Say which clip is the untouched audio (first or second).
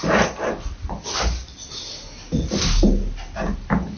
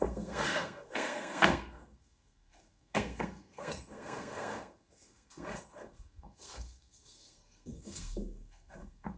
first